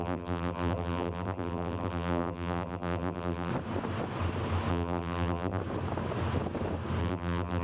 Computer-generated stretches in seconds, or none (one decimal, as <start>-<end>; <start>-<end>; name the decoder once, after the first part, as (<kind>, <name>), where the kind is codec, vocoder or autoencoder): 0.0-3.5 (vocoder, BigVGAN v2); 4.7-5.6; 7.0-7.6